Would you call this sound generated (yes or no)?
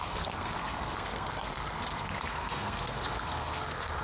yes